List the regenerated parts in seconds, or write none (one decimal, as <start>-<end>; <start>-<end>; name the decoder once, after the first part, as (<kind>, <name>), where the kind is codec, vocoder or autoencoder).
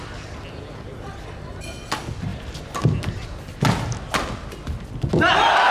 none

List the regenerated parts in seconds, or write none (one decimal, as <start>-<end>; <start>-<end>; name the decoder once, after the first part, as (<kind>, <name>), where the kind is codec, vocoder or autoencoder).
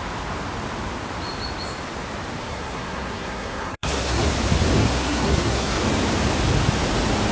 2.4-4.3 (codec, SNAC); 4.8-5.8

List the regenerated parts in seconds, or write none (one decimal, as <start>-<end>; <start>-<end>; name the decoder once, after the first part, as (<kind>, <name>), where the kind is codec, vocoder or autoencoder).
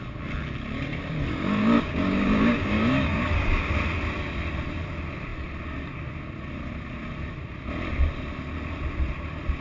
1.6-3.7 (codec, DAC)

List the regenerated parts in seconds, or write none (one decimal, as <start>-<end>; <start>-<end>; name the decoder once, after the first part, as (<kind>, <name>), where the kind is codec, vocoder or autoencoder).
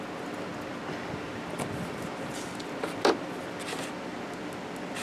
none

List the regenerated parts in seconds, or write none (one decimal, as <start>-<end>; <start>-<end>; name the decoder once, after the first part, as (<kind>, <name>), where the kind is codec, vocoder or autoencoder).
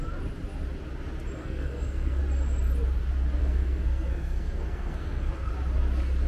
1.4-2.2 (codec, SNAC); 3.4-5.5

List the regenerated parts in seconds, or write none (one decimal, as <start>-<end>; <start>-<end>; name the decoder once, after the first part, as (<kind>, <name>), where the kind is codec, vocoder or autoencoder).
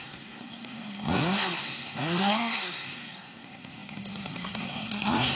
0.0-5.3 (codec, SNAC)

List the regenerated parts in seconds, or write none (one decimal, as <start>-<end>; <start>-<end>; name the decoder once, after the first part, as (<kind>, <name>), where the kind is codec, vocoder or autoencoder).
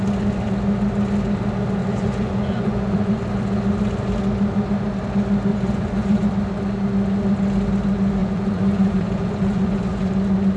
1.8-3.2 (vocoder, Vocos); 5.5-6.3; 8.2-10.1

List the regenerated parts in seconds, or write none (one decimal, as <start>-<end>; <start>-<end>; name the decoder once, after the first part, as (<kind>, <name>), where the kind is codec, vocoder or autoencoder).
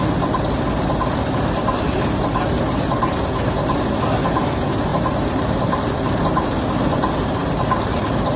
4.9-6.1 (vocoder, BigVGAN v2); 7.4-8.4